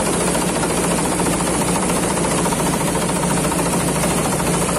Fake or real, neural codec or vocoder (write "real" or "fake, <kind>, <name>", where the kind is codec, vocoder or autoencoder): fake, vocoder, BigVGAN v2